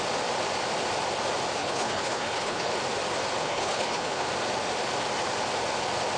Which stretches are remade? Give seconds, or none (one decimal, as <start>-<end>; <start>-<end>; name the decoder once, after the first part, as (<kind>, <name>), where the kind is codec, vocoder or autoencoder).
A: 1.6-2.7 (codec, HILCodec); 3.4-4.3